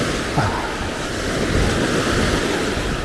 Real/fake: real